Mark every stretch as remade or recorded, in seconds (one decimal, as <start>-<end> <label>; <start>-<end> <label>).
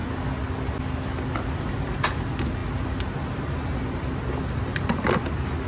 0.0-5.7 recorded